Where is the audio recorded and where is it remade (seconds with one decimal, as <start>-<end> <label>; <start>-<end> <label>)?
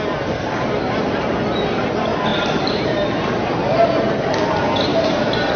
0.0-2.3 recorded; 2.3-3.5 remade; 3.5-4.9 recorded; 4.9-5.6 remade